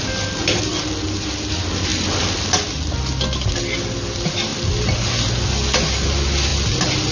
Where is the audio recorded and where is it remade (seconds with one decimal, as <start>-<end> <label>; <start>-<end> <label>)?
0.0-7.1 recorded